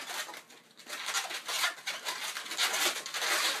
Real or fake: real